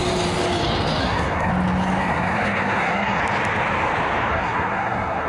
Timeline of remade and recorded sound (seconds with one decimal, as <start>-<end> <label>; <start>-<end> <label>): 0.0-1.0 recorded; 1.0-1.5 remade; 1.5-2.0 recorded; 2.0-3.2 remade; 3.2-4.3 recorded; 4.3-5.3 remade